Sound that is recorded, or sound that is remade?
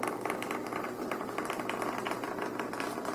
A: recorded